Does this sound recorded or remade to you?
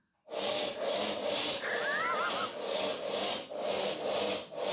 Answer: recorded